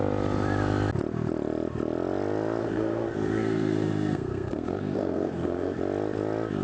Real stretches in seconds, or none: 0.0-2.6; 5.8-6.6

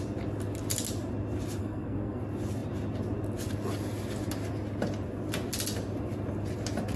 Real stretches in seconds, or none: 0.0-1.6; 2.2-7.0

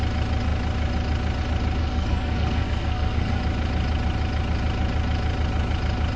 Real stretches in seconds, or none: 0.0-1.8; 3.4-6.2

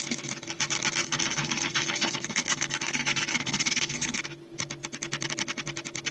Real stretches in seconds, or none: 0.0-1.0; 4.2-6.1

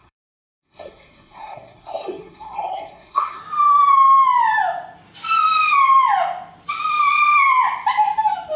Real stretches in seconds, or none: 3.4-8.6

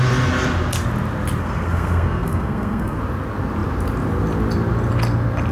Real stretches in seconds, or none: 0.0-1.4; 3.0-5.5